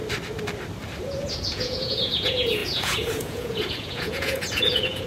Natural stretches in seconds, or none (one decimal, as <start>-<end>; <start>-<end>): 0.0-1.0